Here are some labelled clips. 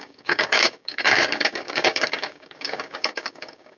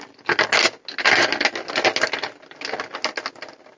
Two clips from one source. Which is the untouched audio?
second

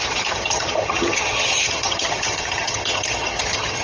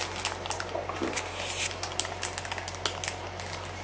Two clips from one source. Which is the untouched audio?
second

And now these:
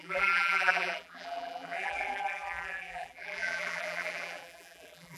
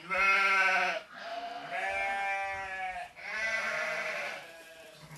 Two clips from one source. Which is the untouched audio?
second